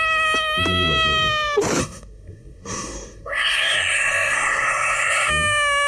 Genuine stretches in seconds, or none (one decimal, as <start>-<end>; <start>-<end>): 0.0-1.8; 5.3-5.9